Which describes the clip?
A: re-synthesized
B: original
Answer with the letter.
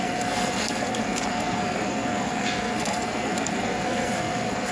A